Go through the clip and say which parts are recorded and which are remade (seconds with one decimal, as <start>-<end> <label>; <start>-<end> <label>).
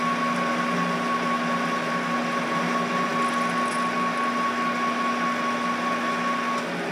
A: 0.0-6.9 recorded